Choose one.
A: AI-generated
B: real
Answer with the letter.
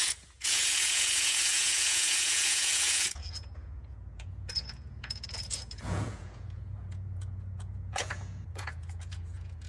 A